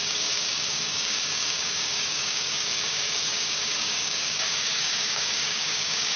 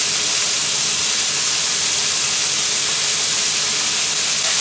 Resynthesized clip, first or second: first